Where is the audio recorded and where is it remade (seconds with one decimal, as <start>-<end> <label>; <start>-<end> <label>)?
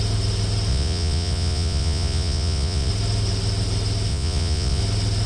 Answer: 0.0-0.7 recorded; 0.7-2.9 remade; 2.9-4.1 recorded; 4.1-4.8 remade; 4.8-5.3 recorded